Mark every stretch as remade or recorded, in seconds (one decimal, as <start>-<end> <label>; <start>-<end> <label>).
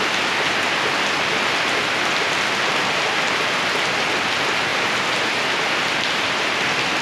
0.0-7.0 recorded